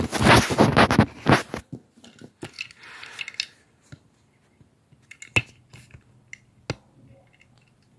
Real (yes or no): yes